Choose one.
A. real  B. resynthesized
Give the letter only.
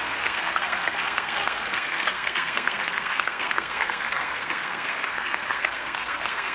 B